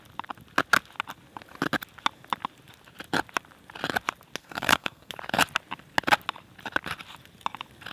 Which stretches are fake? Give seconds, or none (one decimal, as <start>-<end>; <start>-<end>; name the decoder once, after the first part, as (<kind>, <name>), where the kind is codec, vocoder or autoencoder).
4.4-5.1 (codec, SNAC)